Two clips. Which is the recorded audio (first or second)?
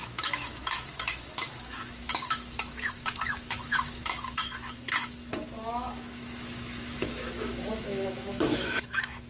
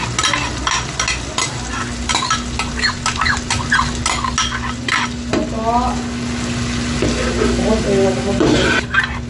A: second